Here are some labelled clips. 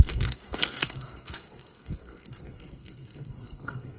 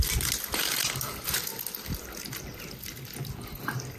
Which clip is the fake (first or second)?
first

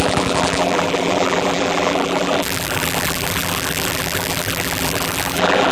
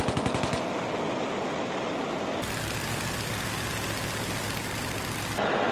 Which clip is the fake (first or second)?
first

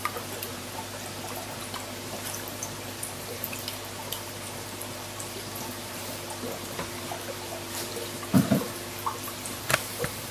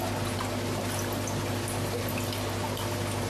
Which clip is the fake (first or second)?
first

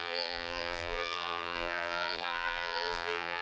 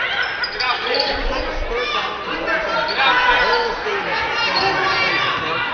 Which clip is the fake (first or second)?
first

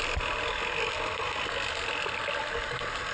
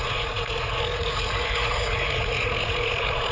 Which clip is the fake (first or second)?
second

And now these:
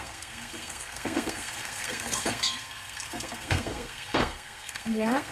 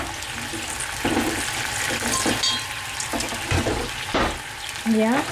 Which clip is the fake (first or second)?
first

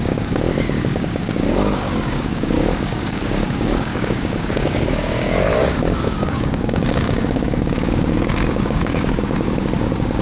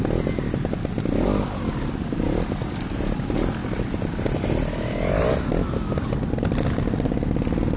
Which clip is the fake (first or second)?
first